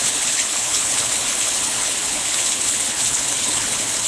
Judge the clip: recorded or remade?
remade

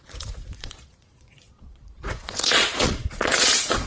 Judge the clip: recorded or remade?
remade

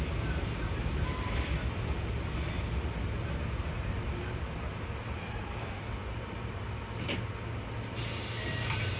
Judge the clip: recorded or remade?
recorded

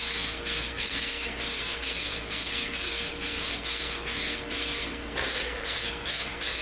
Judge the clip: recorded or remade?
remade